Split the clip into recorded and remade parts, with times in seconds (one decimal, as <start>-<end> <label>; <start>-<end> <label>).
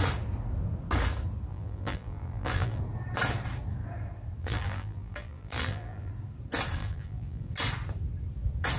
0.0-1.5 recorded; 1.5-2.8 remade; 2.8-4.4 recorded; 4.4-6.1 remade; 6.1-6.8 recorded; 6.8-7.5 remade; 7.5-8.8 recorded